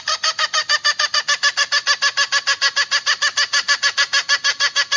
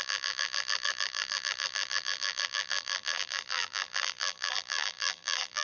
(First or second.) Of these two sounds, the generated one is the second